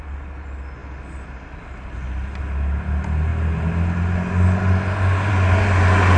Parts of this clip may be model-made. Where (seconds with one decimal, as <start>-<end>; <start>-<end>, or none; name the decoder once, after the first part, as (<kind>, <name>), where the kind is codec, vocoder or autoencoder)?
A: none